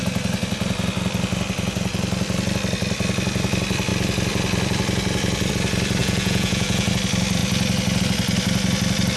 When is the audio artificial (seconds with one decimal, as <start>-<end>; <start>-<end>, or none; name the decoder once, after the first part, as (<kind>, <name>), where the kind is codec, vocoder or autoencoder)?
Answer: 6.0-6.9 (vocoder, Vocos)